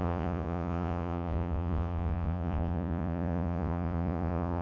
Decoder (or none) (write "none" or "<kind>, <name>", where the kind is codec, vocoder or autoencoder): vocoder, Vocos